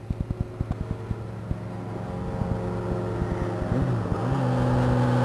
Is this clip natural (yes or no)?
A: yes